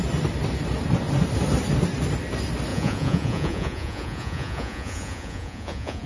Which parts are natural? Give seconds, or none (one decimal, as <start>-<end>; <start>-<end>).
0.0-2.7